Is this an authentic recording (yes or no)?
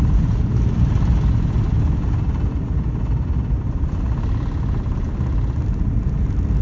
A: yes